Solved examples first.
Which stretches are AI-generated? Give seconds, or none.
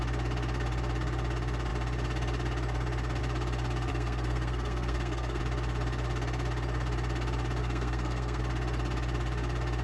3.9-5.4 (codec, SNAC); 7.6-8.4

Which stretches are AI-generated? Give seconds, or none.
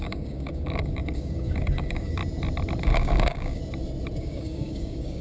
0.0-2.2 (codec, DAC); 2.8-3.6; 4.2-5.2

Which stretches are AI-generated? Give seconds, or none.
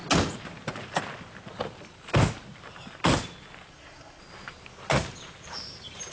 3.7-4.2 (codec, SNAC)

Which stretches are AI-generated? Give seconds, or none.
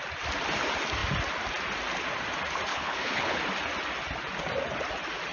2.7-3.4 (codec, HILCodec)